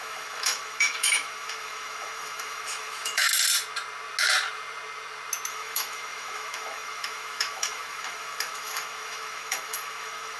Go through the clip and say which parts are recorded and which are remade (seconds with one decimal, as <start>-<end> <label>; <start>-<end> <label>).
0.0-3.3 remade; 3.3-5.5 recorded; 5.5-10.4 remade